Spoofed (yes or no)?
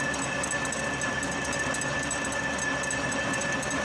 no